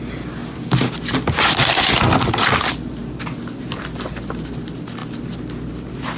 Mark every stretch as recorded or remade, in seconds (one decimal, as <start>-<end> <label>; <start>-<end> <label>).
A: 0.0-6.2 recorded